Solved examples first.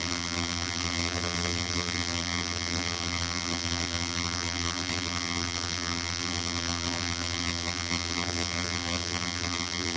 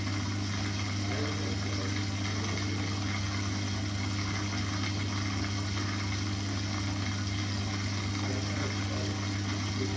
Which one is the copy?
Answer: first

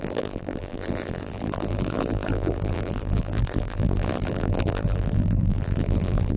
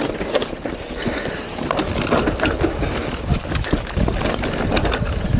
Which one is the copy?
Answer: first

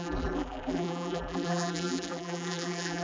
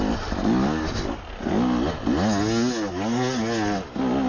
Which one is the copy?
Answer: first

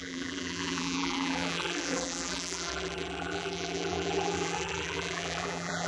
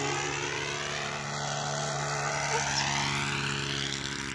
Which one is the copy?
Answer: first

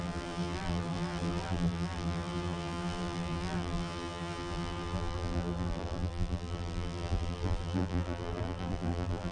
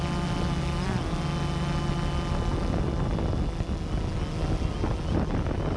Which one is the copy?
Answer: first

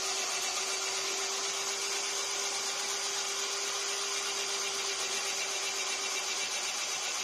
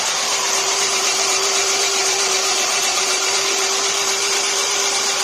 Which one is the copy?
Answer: second